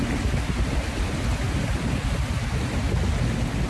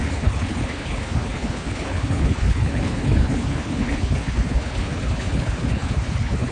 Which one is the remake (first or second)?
second